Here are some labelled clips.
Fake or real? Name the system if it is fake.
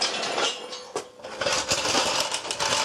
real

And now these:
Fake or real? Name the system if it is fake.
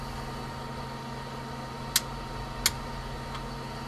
real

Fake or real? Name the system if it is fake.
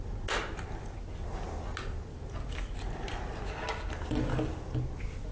real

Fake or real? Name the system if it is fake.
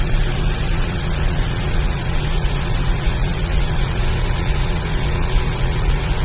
fake, vocoder, Vocos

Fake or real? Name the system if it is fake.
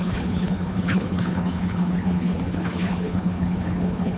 fake, codec, HILCodec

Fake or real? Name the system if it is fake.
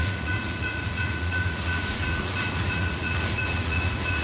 fake, vocoder, Vocos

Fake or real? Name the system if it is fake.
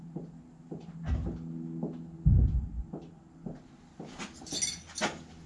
real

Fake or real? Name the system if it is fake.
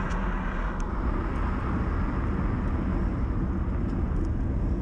real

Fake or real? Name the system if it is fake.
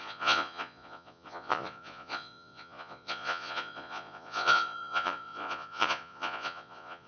fake, vocoder, Vocos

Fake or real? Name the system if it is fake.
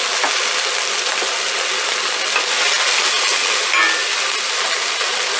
real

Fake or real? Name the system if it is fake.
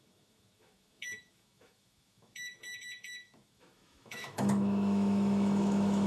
fake, autoencoder, DAC-VAE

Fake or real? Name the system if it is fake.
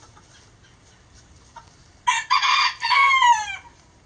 real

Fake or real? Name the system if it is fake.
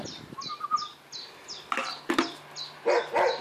real